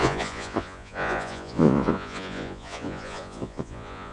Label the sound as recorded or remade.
remade